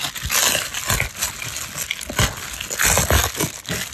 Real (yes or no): yes